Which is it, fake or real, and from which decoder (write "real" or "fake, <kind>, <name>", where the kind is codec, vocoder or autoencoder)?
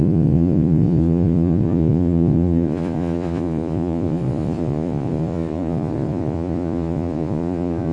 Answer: fake, vocoder, Vocos